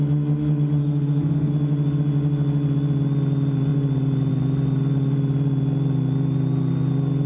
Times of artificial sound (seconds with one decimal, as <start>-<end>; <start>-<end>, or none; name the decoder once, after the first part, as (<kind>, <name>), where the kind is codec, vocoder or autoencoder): 0.8-1.5 (codec, SNAC)